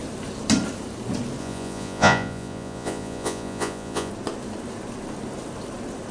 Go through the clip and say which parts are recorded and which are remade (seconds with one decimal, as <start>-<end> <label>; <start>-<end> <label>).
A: 0.0-1.4 recorded; 1.4-4.1 remade; 4.1-6.1 recorded